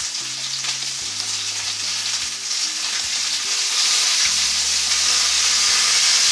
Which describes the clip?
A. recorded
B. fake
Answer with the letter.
A